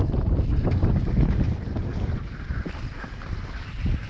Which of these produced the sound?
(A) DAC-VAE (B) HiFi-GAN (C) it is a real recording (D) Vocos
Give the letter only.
C